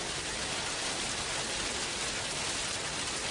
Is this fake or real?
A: real